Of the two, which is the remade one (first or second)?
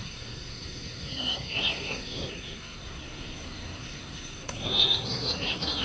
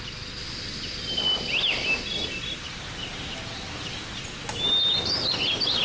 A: first